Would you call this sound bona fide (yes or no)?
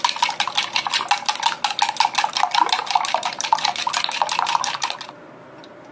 yes